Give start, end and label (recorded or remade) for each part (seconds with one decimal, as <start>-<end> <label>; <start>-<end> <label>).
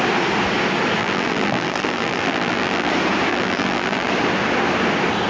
0.0-1.0 recorded; 1.0-2.9 remade; 2.9-3.3 recorded; 3.3-4.1 remade; 4.1-5.3 recorded